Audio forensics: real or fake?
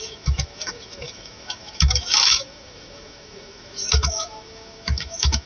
fake